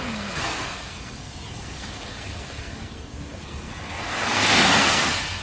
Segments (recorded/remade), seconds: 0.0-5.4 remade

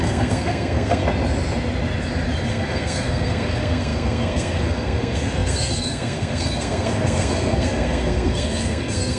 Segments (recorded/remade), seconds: 0.0-1.0 remade; 1.0-2.5 recorded; 2.5-9.2 remade

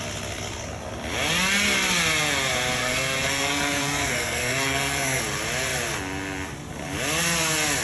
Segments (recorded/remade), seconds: 0.0-2.8 recorded; 2.8-5.2 remade; 5.2-7.8 recorded

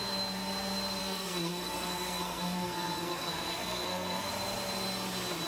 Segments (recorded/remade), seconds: 0.0-1.0 recorded; 1.0-4.3 remade; 4.3-5.5 recorded

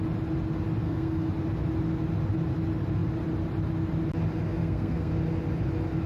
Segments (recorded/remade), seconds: 0.0-0.8 recorded; 0.8-1.3 remade; 1.3-4.6 recorded; 4.6-5.1 remade; 5.1-6.1 recorded

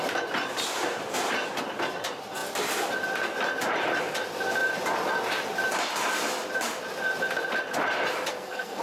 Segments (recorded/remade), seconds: 0.0-8.3 recorded; 8.3-8.8 remade

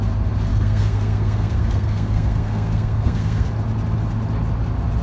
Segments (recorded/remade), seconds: 0.0-0.5 recorded; 0.5-3.5 remade; 3.5-5.0 recorded

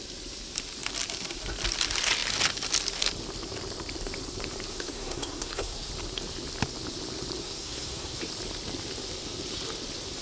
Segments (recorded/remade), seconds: 0.0-4.7 recorded; 4.7-5.9 remade; 5.9-7.4 recorded; 7.4-8.2 remade; 8.2-10.2 recorded